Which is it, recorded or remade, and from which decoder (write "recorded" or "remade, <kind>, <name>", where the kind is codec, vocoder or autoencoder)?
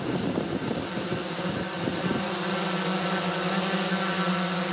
recorded